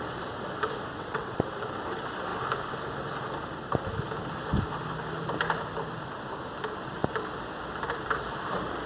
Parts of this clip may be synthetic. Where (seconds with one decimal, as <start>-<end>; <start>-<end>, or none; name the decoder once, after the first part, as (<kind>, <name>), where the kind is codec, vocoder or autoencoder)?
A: 0.9-1.4 (vocoder, WaveNeXt)